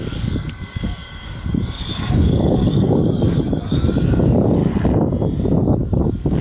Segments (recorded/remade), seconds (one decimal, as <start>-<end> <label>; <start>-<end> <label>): 0.0-4.6 remade; 4.6-5.6 recorded; 5.6-6.4 remade